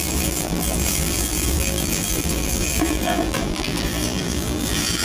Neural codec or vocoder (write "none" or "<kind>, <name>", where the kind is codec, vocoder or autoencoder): vocoder, BigVGAN v2